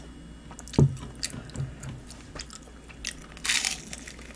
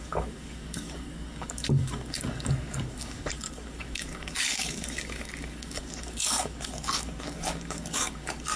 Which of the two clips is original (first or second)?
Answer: first